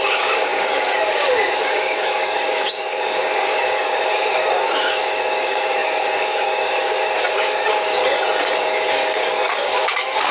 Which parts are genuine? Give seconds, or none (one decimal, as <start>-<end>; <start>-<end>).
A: 8.0-8.9